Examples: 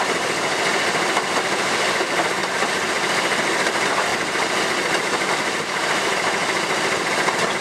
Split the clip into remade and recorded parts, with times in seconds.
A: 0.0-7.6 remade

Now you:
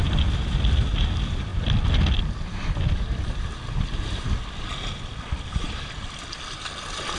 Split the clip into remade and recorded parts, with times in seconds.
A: 0.0-7.2 recorded

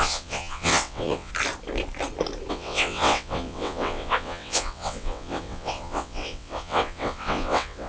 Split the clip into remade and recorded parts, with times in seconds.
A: 0.0-1.3 remade; 1.3-2.5 recorded; 2.5-7.9 remade

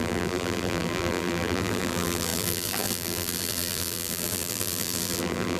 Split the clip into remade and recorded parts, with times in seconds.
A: 0.0-5.6 remade